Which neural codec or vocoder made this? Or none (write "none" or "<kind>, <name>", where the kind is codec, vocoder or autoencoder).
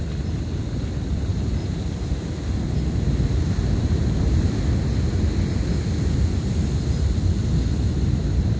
none